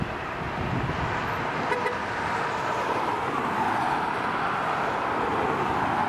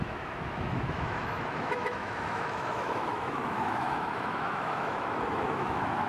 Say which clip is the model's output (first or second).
second